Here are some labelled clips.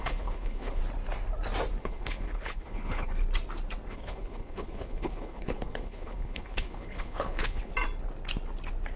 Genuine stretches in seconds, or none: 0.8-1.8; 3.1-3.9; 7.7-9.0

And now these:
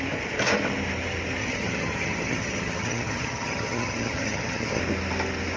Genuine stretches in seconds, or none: 0.0-1.4; 4.8-5.6

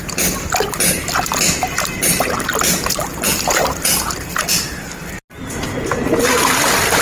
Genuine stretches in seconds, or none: 0.0-3.6; 4.5-7.0

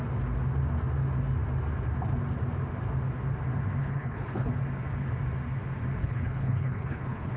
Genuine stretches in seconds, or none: 0.0-3.8; 4.5-6.0

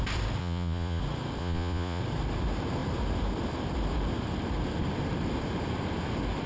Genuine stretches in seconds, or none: 0.0-0.4; 1.0-1.4; 2.0-6.5

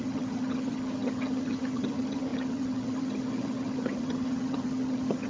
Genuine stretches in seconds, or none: none

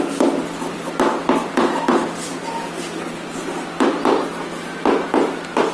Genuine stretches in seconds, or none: 0.0-5.7

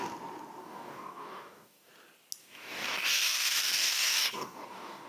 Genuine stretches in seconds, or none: 0.0-0.6; 1.9-2.4